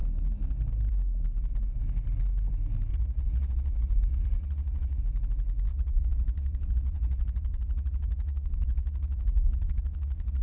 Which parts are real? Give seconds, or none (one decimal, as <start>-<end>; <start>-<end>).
0.0-2.9; 5.0-5.7

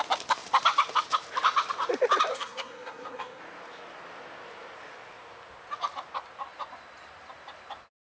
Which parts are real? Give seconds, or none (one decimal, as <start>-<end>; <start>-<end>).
0.0-2.3; 3.4-8.1

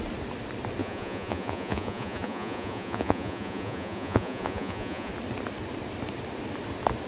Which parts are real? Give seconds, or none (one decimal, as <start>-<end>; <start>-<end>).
0.0-0.8; 5.1-7.1

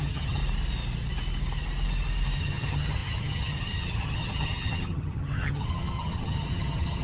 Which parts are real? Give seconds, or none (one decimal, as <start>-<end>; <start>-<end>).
0.4-2.4

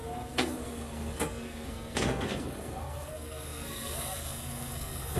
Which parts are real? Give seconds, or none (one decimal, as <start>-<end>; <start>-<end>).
none

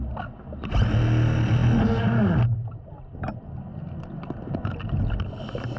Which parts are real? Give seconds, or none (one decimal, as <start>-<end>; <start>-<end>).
0.0-5.8

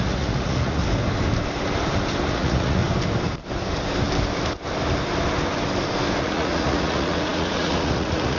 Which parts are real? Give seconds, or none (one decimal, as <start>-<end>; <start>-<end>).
0.8-2.3; 2.8-6.2

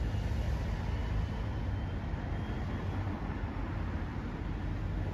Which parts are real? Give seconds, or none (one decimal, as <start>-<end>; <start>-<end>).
0.0-5.1